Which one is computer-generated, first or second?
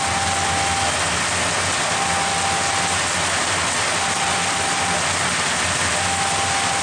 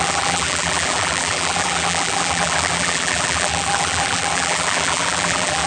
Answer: second